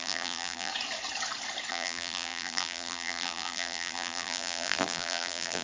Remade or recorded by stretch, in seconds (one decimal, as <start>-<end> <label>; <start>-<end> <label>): 0.0-0.7 remade; 0.7-1.7 recorded; 1.7-5.6 remade